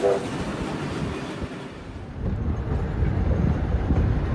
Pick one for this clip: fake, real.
real